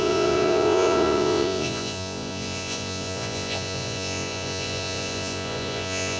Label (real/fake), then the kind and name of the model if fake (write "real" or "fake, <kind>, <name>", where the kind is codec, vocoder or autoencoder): fake, vocoder, Vocos